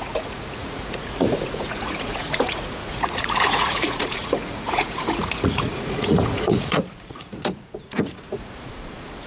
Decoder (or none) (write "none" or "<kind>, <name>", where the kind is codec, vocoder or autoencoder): vocoder, Vocos